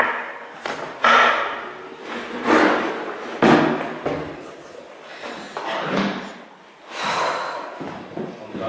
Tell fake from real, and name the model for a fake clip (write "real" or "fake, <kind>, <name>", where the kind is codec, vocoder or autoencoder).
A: real